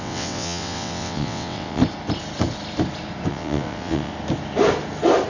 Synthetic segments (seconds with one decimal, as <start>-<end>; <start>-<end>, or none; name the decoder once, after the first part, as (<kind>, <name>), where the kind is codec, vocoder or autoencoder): 0.0-1.8 (vocoder, WaveNeXt); 3.3-4.1